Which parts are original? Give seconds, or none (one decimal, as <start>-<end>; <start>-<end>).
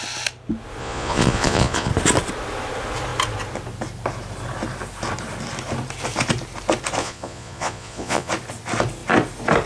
0.0-0.8; 1.9-7.0; 8.3-9.7